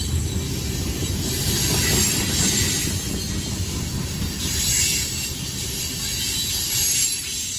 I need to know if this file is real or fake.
real